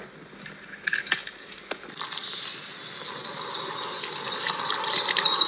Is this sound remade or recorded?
recorded